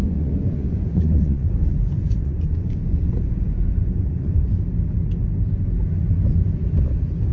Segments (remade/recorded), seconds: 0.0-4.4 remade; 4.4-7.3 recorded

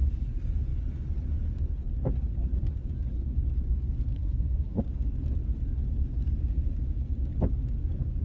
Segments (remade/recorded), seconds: 0.0-4.1 recorded; 4.1-4.8 remade; 4.8-8.2 recorded

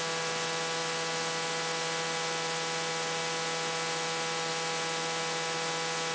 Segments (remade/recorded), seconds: 0.0-6.1 recorded

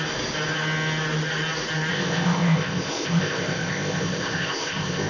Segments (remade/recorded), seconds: 0.0-1.9 recorded; 1.9-5.1 remade

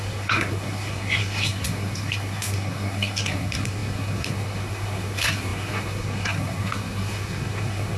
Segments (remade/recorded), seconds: 0.0-8.0 remade

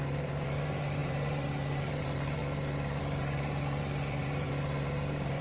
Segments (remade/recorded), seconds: 0.0-2.4 remade; 2.4-3.0 recorded; 3.0-5.4 remade